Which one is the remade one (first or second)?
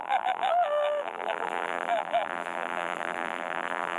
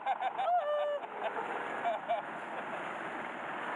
first